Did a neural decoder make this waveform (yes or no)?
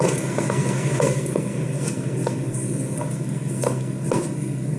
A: yes